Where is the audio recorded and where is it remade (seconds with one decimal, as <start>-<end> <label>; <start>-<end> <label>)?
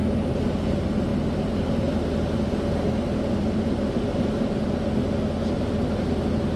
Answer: 0.0-6.6 recorded